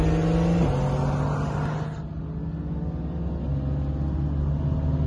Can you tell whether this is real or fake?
real